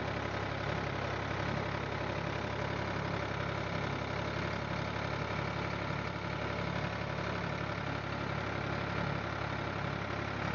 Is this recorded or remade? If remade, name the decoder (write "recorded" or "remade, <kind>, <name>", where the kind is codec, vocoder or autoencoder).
recorded